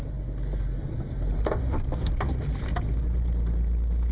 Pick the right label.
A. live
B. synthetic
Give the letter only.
A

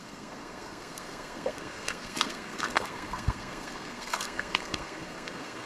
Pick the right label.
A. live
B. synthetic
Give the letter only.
B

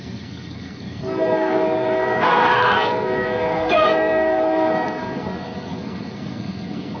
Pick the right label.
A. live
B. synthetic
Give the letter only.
B